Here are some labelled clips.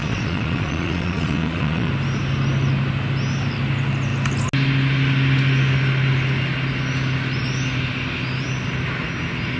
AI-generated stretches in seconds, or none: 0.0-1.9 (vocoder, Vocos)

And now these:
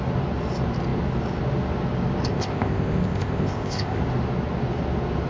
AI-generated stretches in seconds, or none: 2.3-4.0 (codec, ZipCodec)

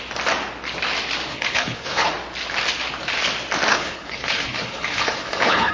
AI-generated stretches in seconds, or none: 1.3-2.1 (codec, HILCodec); 3.7-5.7

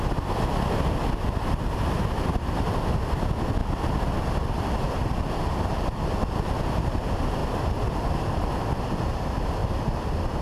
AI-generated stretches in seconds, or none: 9.6-10.4 (vocoder, BigVGAN v2)

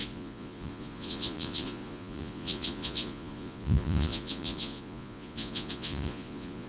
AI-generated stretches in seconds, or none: 0.0-6.7 (vocoder, Vocos)